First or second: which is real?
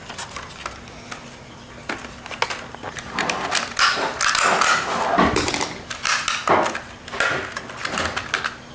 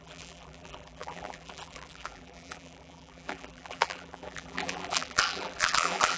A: first